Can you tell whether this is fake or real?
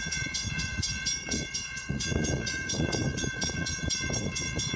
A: fake